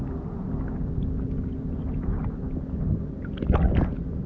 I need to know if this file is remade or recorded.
recorded